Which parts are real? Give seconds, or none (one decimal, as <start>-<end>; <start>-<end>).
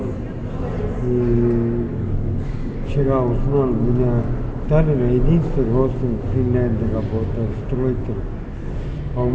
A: 0.0-1.9; 2.9-9.3